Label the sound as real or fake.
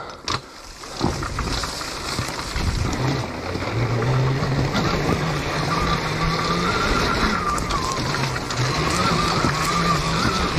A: real